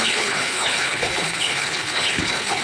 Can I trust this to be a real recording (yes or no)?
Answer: no